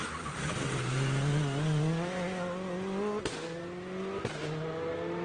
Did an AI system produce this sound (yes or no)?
no